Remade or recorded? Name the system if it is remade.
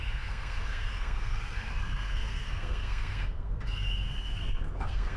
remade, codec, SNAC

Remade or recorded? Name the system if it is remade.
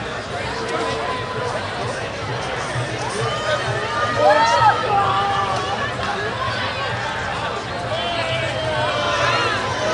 recorded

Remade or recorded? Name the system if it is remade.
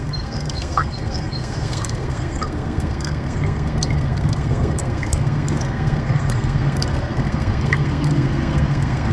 remade, codec, SNAC